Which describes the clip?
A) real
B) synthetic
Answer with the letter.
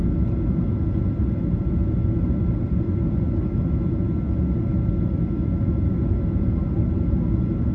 A